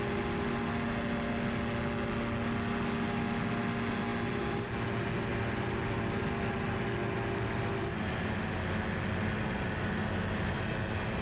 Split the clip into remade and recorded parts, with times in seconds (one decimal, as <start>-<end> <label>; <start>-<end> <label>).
0.0-4.1 recorded; 4.1-4.7 remade; 4.7-5.3 recorded; 5.3-8.5 remade; 8.5-11.2 recorded